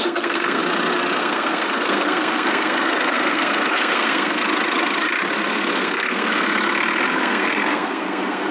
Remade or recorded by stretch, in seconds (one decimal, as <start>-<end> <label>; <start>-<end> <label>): 0.0-0.6 remade; 0.6-1.2 recorded; 1.2-4.4 remade; 4.4-5.7 recorded; 5.7-6.5 remade; 6.5-7.1 recorded; 7.1-8.5 remade